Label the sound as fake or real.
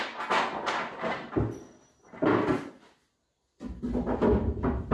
real